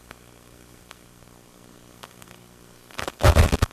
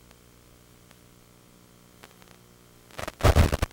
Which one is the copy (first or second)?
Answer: first